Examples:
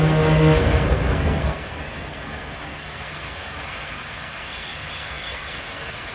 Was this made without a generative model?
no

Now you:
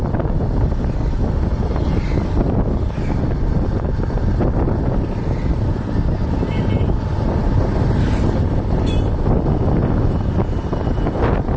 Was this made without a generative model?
yes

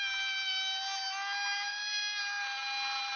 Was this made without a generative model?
yes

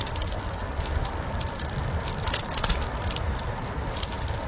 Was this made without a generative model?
yes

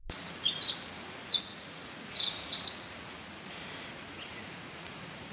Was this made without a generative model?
no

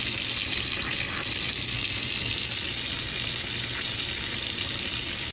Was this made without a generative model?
yes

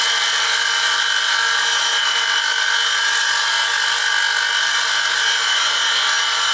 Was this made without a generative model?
yes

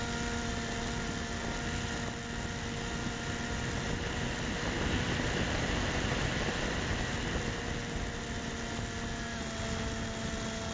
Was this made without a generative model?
yes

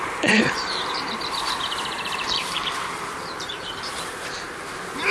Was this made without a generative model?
no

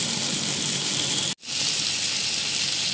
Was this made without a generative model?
yes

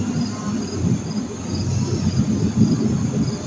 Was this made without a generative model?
yes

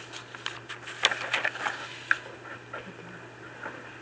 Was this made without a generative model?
yes